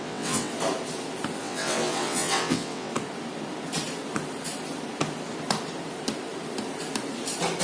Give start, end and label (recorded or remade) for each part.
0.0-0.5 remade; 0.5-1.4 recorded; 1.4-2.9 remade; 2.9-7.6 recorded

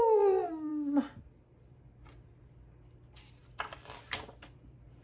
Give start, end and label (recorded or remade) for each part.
0.0-5.0 recorded